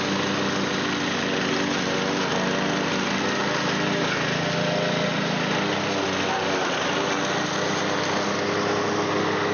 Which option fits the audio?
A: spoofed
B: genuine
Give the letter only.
B